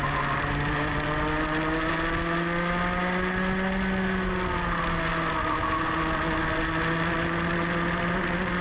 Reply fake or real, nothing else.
real